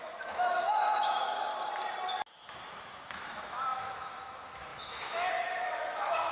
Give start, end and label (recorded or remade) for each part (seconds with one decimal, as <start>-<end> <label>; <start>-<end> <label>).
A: 0.0-1.5 remade; 1.5-2.8 recorded; 2.8-6.3 remade